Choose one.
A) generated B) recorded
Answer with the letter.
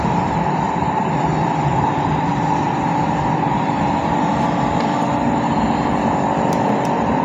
A